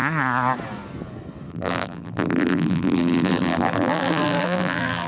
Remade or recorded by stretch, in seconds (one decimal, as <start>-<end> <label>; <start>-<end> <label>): 0.0-1.5 recorded; 1.5-5.1 remade

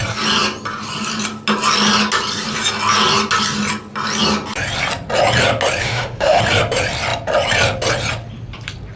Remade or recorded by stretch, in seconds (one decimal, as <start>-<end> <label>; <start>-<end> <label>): 0.0-5.8 recorded; 5.8-6.4 remade; 6.4-9.0 recorded

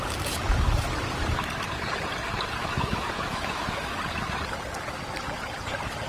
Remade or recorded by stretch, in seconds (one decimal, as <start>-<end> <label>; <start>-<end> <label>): 0.0-2.6 recorded; 2.6-4.0 remade; 4.0-6.1 recorded

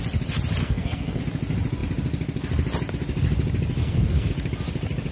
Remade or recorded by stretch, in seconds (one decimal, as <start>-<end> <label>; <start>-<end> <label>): 0.0-0.6 recorded; 0.6-1.2 remade; 1.2-3.8 recorded; 3.8-4.3 remade; 4.3-5.1 recorded

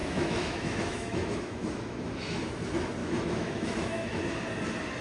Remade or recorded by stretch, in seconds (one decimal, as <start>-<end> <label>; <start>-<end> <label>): 0.0-2.5 remade; 2.5-3.0 recorded; 3.0-4.2 remade; 4.2-5.0 recorded